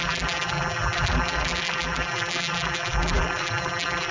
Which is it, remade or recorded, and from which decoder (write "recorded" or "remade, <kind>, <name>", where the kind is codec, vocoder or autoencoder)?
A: remade, vocoder, BigVGAN v2